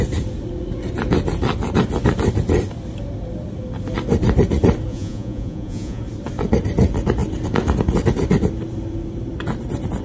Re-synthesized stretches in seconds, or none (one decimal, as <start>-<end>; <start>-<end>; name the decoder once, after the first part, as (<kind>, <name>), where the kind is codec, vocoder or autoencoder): 4.9-6.0 (vocoder, Vocos)